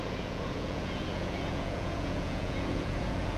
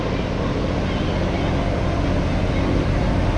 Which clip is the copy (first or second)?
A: first